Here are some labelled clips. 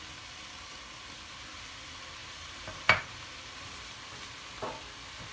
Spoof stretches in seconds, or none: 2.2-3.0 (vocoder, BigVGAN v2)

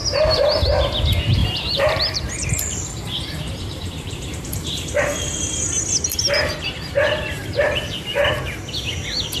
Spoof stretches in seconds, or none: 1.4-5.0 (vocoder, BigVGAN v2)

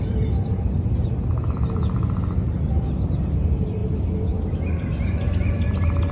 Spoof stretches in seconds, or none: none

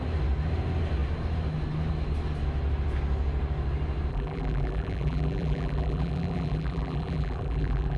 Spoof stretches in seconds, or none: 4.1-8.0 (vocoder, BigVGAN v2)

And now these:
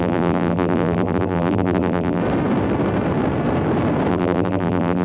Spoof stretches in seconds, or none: 0.0-2.2 (vocoder, BigVGAN v2); 4.1-5.0

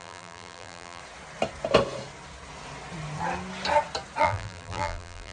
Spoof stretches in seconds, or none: 0.0-1.0 (vocoder, BigVGAN v2); 4.2-5.3

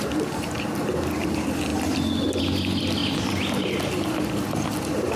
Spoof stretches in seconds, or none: 3.0-3.8 (vocoder, BigVGAN v2)